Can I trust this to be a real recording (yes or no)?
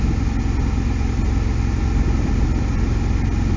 yes